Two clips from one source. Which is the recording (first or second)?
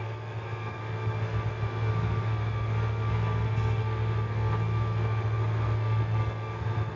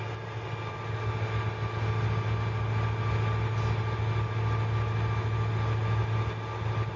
second